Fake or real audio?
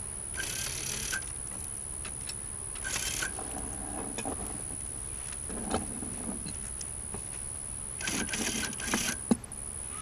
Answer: real